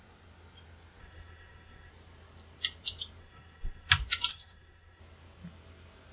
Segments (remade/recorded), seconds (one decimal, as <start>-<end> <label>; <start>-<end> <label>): 0.0-1.0 recorded; 1.0-1.9 remade; 1.9-3.2 recorded; 3.2-3.9 remade; 3.9-4.3 recorded; 4.3-5.0 remade; 5.0-6.1 recorded